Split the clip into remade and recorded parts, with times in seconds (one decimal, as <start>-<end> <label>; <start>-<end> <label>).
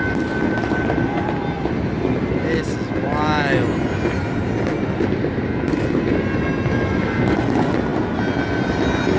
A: 0.0-9.2 recorded